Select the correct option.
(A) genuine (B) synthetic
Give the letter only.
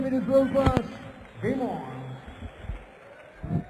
A